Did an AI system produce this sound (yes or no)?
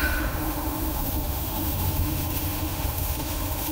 yes